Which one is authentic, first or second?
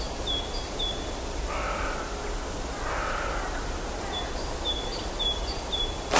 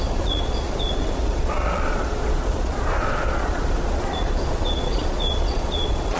first